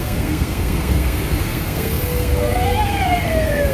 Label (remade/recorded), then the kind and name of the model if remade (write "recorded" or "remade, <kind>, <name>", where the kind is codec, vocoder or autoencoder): remade, codec, SNAC